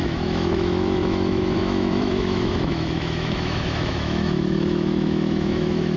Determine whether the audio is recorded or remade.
remade